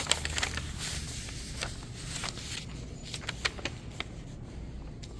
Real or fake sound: real